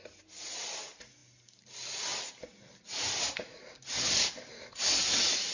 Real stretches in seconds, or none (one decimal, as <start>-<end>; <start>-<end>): 0.0-5.5